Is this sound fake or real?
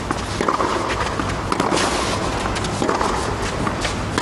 real